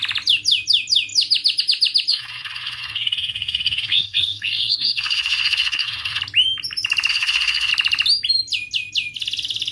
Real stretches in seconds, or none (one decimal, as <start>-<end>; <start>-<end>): 0.0-2.1; 6.2-7.1; 7.7-9.7